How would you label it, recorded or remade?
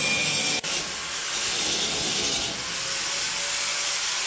recorded